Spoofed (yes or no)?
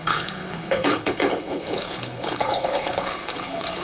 yes